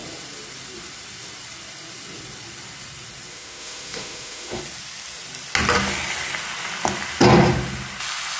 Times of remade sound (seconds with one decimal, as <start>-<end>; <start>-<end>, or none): 3.3-4.6